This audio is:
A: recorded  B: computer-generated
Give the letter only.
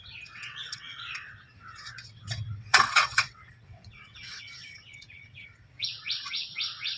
B